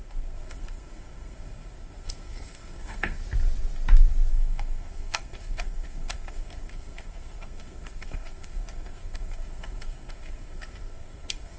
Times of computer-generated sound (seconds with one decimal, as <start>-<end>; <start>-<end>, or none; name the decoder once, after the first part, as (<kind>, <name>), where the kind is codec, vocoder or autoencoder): 0.0-3.2 (codec, SNAC); 4.3-11.6